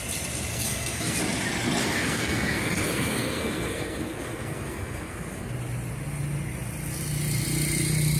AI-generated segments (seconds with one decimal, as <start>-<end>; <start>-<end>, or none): 0.5-1.2; 1.8-5.5